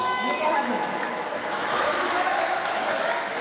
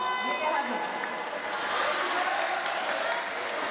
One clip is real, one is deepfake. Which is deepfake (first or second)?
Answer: first